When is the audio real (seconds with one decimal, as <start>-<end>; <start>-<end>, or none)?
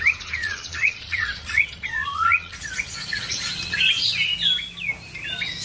0.0-0.4; 3.8-5.6